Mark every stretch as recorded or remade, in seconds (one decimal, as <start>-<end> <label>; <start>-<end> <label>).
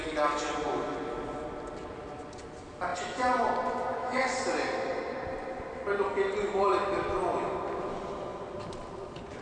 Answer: 0.0-3.9 recorded; 3.9-4.4 remade; 4.4-9.4 recorded